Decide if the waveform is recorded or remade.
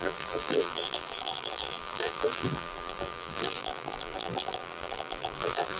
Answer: remade